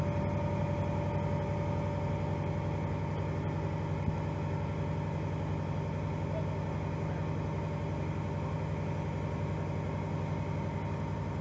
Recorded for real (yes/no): yes